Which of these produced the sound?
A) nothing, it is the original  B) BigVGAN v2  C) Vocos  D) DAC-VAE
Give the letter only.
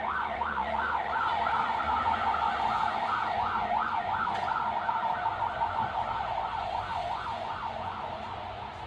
C